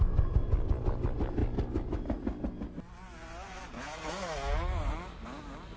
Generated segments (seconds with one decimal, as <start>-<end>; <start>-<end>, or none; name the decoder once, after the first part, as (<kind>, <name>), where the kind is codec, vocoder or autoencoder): none